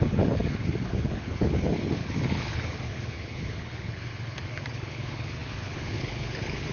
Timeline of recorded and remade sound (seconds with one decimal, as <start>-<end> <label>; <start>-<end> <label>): 0.0-6.7 remade